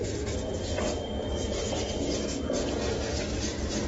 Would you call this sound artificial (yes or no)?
no